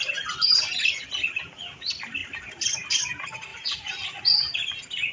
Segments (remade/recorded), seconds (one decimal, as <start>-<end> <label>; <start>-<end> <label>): 0.0-3.5 recorded; 3.5-4.2 remade; 4.2-5.1 recorded